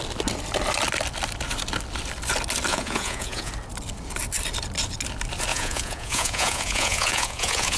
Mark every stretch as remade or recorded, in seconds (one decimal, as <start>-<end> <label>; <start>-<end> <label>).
0.0-2.7 recorded; 2.7-3.5 remade; 3.5-5.5 recorded; 5.5-7.8 remade